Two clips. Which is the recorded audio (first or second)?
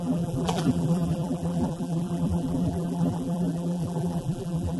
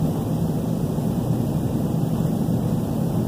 second